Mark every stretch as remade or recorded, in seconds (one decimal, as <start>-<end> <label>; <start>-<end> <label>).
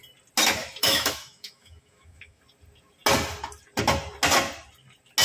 0.0-0.6 recorded; 0.6-2.4 remade; 2.4-5.2 recorded